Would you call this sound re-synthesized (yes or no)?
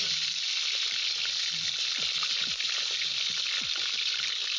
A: no